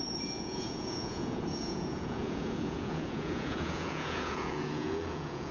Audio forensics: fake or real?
fake